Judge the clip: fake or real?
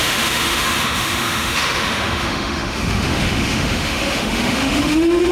fake